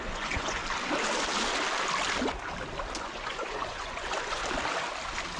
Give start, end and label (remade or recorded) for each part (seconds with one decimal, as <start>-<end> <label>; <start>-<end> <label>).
0.0-0.6 remade; 0.6-3.0 recorded; 3.0-4.4 remade; 4.4-5.4 recorded